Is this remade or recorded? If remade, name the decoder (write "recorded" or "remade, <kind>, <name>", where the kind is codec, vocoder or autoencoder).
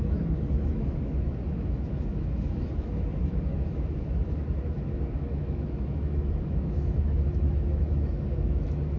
remade, autoencoder, DAC-VAE